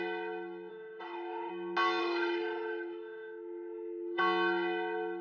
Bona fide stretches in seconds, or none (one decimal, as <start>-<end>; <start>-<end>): 0.0-0.7; 1.5-2.0; 4.2-5.2